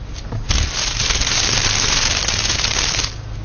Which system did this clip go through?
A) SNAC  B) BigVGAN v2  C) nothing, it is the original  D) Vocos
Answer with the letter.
C